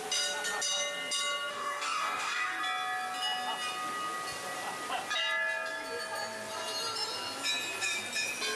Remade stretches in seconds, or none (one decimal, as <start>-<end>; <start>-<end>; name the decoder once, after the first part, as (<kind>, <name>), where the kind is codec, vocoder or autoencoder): 1.5-2.6 (codec, DAC)